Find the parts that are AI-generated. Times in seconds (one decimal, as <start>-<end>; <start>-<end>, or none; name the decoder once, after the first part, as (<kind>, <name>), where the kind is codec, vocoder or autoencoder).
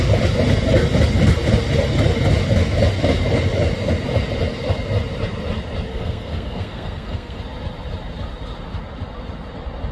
5.9-7.4 (codec, SNAC)